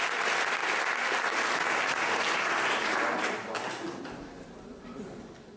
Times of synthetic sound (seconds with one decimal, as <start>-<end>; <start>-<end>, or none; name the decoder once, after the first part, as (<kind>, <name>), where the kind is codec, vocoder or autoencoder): none